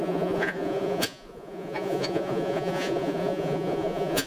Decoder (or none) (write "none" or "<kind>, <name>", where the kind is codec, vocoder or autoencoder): vocoder, Vocos